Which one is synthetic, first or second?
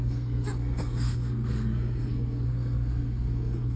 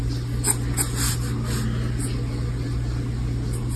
first